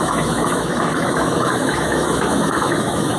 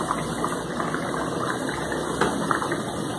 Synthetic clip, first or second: first